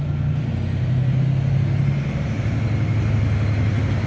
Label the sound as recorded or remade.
recorded